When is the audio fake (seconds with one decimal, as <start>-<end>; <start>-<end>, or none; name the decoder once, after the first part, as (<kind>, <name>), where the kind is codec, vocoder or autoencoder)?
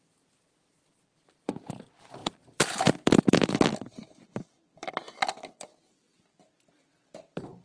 0.0-7.6 (vocoder, BigVGAN v2)